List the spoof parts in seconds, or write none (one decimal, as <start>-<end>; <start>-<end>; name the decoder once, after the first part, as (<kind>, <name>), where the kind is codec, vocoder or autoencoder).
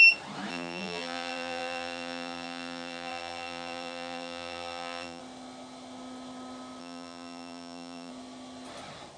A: 0.5-5.2 (vocoder, BigVGAN v2); 6.8-8.1